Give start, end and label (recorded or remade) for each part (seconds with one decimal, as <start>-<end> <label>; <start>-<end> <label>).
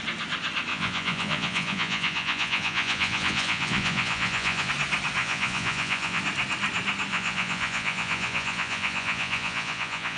0.0-0.7 recorded; 0.7-4.7 remade; 4.7-5.2 recorded; 5.2-6.2 remade; 6.2-7.1 recorded; 7.1-10.2 remade